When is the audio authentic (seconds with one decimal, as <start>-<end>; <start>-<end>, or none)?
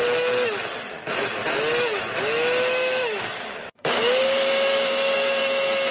0.0-3.1; 5.4-5.9